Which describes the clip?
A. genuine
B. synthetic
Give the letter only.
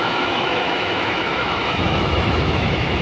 B